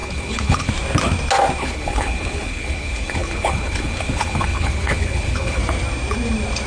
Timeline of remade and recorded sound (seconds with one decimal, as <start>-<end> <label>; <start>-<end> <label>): 0.0-0.7 remade; 0.7-1.6 recorded; 1.6-5.6 remade; 5.6-6.7 recorded